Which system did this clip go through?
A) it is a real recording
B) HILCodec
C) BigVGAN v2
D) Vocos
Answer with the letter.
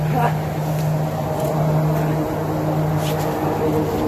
A